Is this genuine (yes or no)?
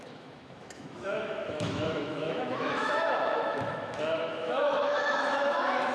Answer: no